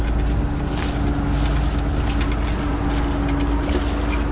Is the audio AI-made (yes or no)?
no